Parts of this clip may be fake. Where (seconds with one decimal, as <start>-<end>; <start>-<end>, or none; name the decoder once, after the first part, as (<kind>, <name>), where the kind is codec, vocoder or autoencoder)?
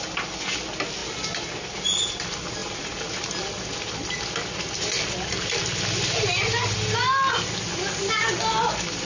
none